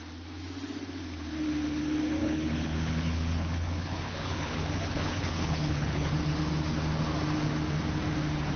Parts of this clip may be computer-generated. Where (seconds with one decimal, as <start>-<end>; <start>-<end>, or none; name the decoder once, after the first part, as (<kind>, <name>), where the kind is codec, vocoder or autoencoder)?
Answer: 2.2-6.1 (codec, HILCodec)